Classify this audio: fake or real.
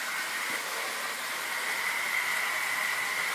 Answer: fake